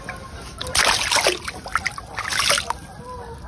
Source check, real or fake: real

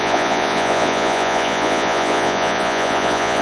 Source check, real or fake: fake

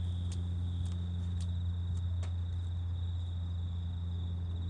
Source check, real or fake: real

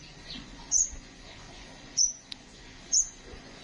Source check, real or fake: fake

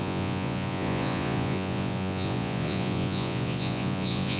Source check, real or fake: fake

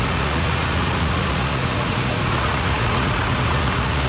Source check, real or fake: fake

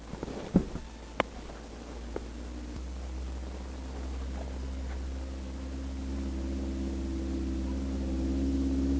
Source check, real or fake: real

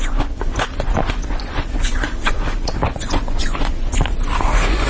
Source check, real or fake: fake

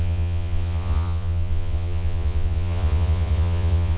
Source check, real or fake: fake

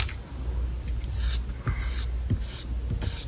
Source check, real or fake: real